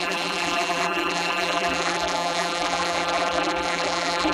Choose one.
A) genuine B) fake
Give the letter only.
B